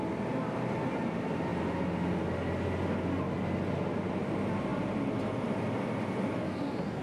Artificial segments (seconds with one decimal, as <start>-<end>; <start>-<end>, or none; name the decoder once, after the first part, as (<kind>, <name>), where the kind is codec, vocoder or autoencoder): none